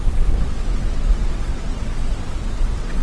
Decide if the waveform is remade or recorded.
remade